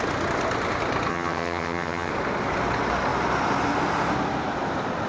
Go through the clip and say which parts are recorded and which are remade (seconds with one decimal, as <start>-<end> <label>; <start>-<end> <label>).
0.0-1.1 recorded; 1.1-2.1 remade; 2.1-5.1 recorded